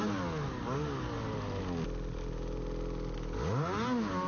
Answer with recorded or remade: recorded